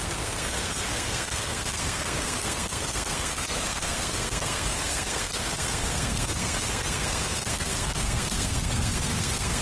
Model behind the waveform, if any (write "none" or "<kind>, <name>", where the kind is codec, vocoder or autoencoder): codec, SNAC